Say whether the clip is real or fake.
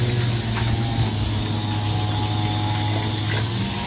real